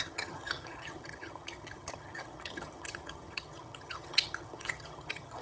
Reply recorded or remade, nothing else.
remade